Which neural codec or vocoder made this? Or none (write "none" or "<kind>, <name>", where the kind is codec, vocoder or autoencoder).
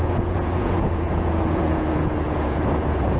vocoder, Vocos